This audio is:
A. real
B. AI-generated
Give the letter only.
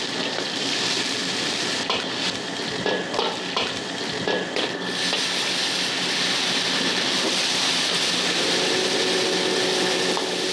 A